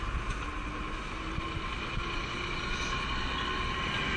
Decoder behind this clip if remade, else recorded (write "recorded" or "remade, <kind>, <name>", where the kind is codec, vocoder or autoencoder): recorded